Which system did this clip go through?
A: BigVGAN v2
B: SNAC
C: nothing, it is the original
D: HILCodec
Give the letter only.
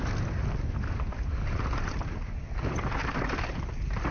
C